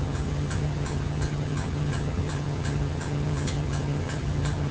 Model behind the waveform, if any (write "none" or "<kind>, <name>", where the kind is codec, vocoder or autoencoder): vocoder, HiFi-GAN